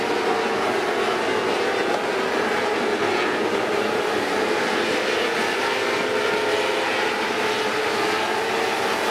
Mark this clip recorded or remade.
recorded